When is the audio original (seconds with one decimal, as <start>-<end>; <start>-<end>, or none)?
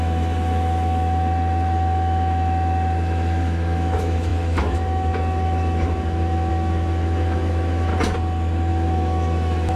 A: 7.9-8.7